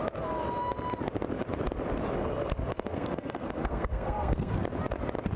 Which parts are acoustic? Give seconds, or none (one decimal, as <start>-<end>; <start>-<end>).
0.0-2.7; 4.5-5.4

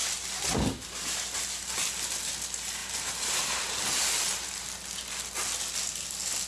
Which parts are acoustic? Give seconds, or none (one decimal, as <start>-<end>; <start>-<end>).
0.0-2.8; 3.6-6.5